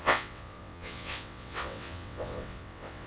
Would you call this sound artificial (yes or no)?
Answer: yes